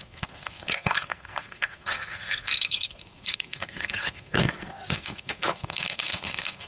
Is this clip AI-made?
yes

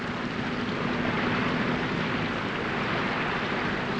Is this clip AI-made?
no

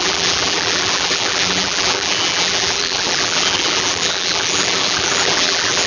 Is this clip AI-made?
yes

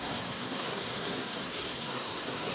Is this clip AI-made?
yes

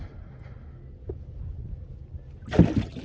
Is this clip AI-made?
no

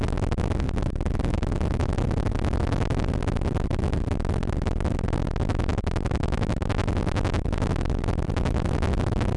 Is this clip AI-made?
no